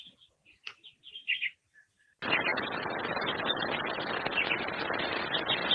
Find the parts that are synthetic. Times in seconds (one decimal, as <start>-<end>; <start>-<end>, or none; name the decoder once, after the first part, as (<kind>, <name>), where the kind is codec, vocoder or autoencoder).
none